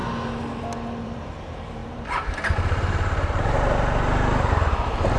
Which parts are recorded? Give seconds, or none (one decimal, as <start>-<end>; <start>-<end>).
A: 0.0-1.0